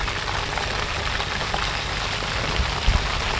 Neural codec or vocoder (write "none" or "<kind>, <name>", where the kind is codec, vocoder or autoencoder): none